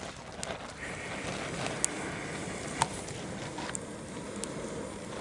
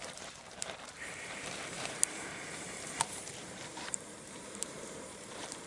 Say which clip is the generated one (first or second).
second